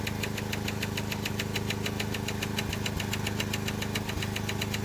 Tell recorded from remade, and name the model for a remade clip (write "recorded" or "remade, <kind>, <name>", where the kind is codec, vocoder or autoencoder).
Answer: recorded